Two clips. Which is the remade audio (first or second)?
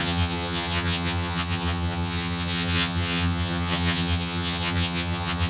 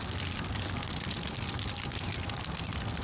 first